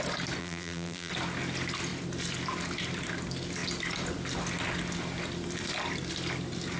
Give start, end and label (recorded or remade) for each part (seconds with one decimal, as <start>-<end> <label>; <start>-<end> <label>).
0.0-0.4 recorded; 0.4-1.1 remade; 1.1-6.8 recorded

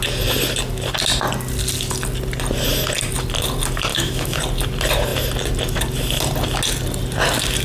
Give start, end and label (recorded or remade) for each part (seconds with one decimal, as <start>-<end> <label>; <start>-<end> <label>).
0.0-3.9 recorded; 3.9-4.4 remade; 4.4-7.6 recorded